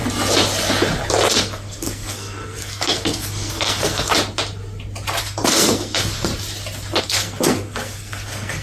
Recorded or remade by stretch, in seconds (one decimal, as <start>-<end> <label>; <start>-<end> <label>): 0.0-1.3 recorded; 1.3-4.1 remade; 4.1-5.2 recorded; 5.2-6.3 remade; 6.3-7.0 recorded; 7.0-8.6 remade